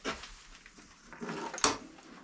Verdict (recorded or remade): recorded